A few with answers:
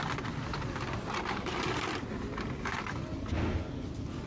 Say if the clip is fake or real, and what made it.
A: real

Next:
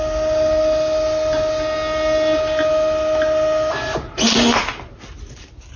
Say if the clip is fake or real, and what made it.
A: real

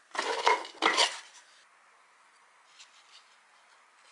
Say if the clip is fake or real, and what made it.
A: real